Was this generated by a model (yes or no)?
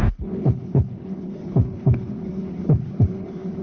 yes